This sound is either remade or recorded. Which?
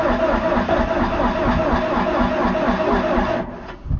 recorded